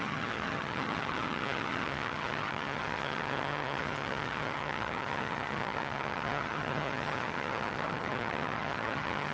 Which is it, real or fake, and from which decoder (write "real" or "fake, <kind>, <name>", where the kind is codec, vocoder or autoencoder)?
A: fake, vocoder, HiFi-GAN